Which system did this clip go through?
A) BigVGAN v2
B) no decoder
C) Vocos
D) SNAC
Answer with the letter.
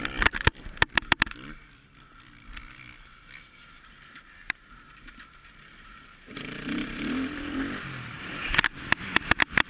A